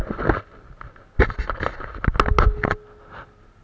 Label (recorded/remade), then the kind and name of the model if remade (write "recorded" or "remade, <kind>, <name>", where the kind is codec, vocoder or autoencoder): recorded